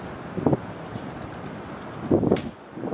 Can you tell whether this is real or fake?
real